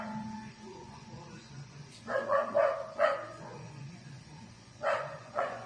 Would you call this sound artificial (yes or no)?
yes